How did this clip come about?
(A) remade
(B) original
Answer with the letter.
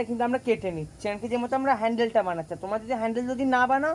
B